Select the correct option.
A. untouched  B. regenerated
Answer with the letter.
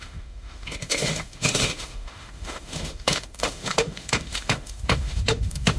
B